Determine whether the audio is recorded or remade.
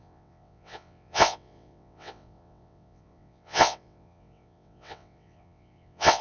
remade